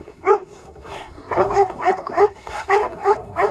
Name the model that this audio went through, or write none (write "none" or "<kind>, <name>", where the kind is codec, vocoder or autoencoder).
codec, SNAC